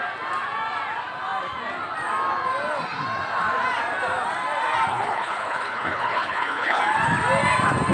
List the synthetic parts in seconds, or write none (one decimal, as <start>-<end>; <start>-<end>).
4.9-6.8